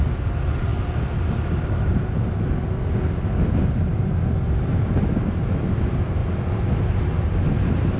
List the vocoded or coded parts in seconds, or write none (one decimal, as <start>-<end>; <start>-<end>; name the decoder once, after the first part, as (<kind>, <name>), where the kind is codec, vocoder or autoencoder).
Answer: none